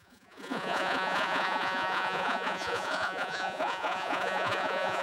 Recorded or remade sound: remade